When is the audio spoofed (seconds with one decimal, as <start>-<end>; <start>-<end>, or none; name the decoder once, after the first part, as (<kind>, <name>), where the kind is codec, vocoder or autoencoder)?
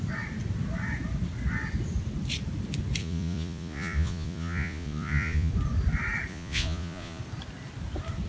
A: 3.0-5.5 (vocoder, Vocos); 6.3-7.2